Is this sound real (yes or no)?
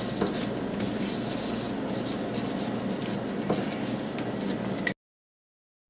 yes